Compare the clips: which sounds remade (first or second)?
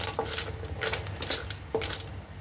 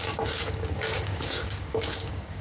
second